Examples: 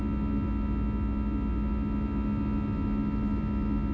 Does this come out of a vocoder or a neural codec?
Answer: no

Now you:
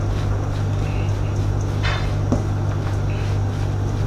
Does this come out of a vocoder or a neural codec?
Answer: no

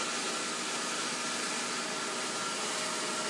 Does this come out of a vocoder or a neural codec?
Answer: no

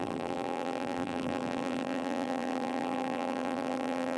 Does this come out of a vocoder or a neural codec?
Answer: yes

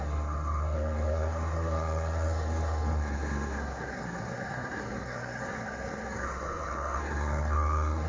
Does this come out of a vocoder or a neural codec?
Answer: yes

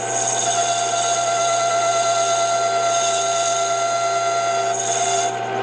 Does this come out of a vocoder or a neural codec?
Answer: no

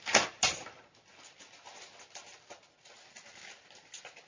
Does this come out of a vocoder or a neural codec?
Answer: no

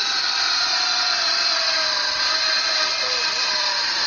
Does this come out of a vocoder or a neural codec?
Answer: no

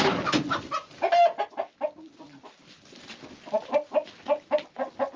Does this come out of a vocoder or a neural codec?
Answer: no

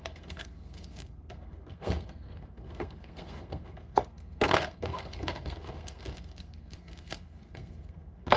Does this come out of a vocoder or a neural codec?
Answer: yes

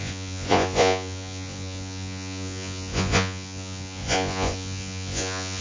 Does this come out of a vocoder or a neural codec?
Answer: yes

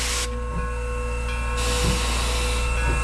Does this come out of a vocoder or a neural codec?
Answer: no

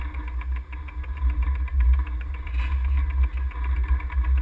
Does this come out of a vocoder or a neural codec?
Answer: no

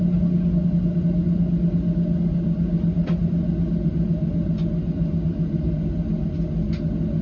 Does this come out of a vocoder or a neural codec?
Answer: no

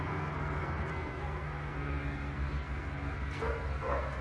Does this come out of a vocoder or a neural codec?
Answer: yes